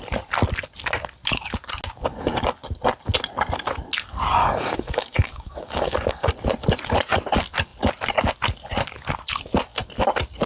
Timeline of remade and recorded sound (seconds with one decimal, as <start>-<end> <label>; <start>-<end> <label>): 0.0-4.4 recorded; 4.4-6.3 remade; 6.3-10.5 recorded